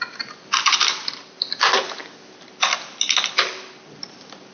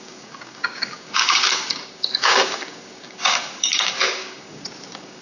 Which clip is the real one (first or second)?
first